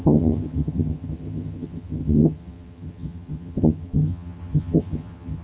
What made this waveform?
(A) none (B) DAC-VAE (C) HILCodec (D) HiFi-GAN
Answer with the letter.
D